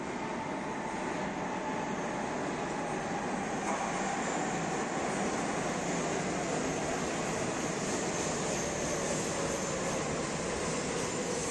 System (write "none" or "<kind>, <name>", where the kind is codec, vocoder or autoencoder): none